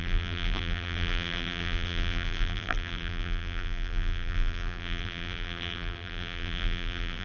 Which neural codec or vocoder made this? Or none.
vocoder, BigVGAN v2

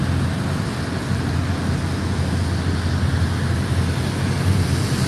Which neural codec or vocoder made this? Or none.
none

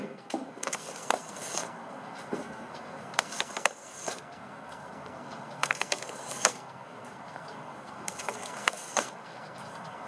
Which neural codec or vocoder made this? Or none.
codec, SNAC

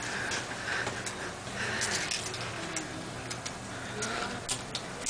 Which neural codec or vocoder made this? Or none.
none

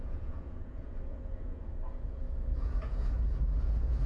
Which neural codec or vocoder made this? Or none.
vocoder, Vocos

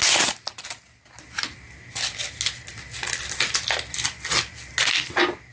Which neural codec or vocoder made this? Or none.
none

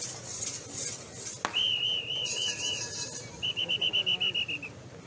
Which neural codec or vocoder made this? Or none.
none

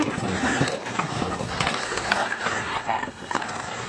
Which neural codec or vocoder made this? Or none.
codec, SNAC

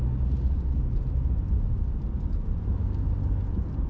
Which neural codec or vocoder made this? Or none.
none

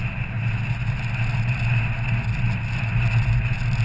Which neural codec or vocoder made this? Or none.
none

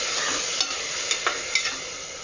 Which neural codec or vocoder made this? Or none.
none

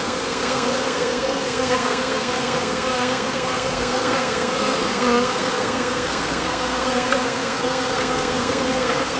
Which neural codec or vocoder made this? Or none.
codec, SNAC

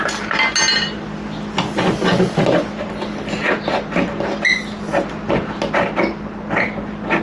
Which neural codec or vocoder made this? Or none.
none